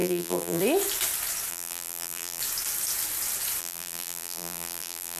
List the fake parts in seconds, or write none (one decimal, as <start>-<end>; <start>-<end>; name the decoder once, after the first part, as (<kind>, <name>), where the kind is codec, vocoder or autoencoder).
0.0-0.6 (vocoder, BigVGAN v2); 1.5-2.4; 3.6-5.2